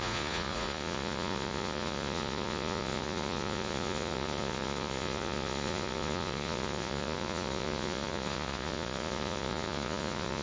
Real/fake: fake